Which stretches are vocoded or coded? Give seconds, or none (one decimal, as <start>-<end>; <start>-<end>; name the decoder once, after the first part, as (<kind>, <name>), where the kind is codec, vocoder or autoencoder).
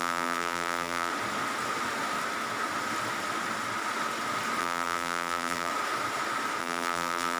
0.0-1.1 (vocoder, BigVGAN v2); 4.6-5.7; 6.6-7.4